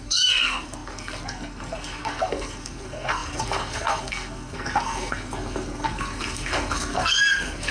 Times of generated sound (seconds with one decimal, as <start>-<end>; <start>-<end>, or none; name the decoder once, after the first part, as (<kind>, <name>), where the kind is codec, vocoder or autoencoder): 0.0-7.7 (codec, SNAC)